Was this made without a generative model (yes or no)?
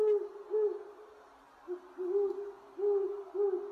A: yes